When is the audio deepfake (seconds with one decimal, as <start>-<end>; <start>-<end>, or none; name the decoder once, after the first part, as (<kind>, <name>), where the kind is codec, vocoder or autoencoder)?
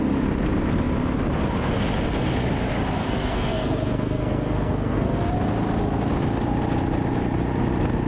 3.0-5.3 (codec, SNAC)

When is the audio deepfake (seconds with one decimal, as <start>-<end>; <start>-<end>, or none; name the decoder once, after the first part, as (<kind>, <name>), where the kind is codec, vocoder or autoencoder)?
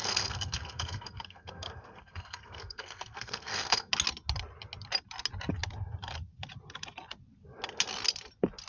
0.0-3.9 (codec, SNAC)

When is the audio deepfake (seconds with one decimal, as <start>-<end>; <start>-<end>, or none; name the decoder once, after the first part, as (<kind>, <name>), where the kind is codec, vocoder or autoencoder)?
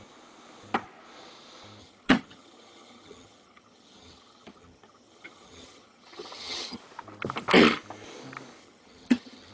1.8-6.8 (vocoder, HiFi-GAN); 8.6-9.5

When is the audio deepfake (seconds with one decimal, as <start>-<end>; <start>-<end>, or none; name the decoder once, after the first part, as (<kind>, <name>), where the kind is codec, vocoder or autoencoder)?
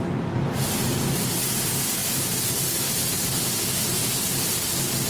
none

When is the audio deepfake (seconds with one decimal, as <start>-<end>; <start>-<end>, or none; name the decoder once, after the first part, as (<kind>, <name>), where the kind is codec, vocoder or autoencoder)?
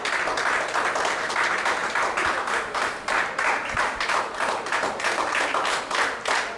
1.8-5.8 (vocoder, BigVGAN v2)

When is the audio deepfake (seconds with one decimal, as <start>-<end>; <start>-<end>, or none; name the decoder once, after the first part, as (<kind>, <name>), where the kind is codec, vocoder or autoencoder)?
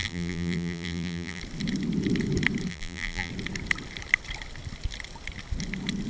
0.0-1.4 (vocoder, BigVGAN v2); 2.7-3.3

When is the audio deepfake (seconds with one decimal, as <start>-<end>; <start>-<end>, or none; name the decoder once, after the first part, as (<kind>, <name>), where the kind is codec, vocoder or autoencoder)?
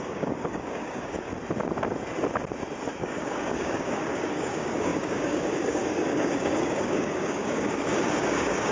0.0-1.3 (codec, DAC); 3.0-8.7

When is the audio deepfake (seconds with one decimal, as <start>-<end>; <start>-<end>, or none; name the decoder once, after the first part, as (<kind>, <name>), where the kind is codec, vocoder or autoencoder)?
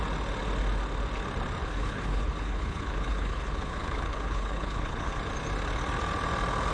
1.6-5.1 (codec, HILCodec)